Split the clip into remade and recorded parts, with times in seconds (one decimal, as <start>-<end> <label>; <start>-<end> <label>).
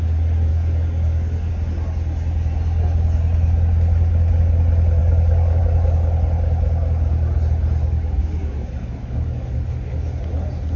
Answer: 0.0-0.5 recorded; 0.5-1.5 remade; 1.5-5.0 recorded; 5.0-5.6 remade; 5.6-7.8 recorded; 7.8-9.7 remade; 9.7-10.8 recorded